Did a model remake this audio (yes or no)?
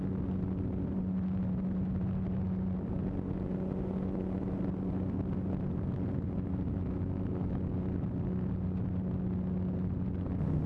no